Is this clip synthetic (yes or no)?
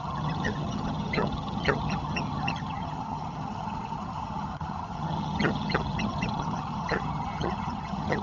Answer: yes